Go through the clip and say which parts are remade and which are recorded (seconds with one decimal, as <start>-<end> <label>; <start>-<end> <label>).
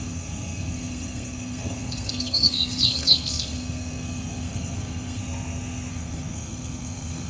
0.0-5.2 remade; 5.2-5.9 recorded; 5.9-7.3 remade